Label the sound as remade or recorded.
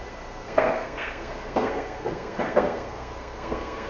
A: remade